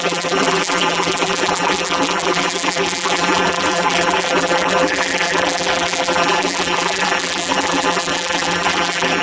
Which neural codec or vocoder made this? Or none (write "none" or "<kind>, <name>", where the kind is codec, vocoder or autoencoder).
vocoder, BigVGAN v2